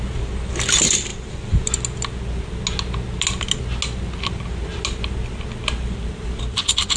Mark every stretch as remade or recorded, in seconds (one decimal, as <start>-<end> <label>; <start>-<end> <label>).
0.0-7.0 recorded